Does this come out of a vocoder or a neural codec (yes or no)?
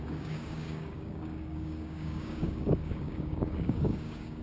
yes